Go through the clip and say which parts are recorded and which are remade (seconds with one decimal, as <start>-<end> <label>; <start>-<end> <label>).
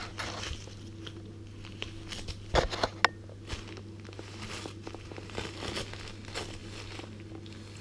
0.0-7.8 recorded